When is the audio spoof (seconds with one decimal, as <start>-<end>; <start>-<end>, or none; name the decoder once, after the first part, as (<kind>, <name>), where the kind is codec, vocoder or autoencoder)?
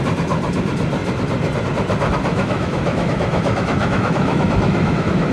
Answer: 2.3-5.3 (autoencoder, DAC-VAE)